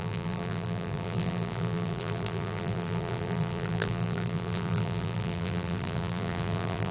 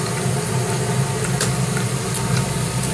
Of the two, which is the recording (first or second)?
second